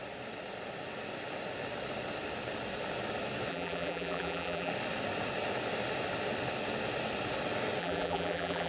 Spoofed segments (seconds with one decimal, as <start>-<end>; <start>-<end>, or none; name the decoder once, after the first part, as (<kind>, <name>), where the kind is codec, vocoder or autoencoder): 3.5-4.7 (vocoder, BigVGAN v2); 7.8-8.7